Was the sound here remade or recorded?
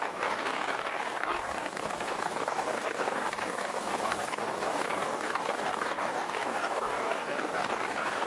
remade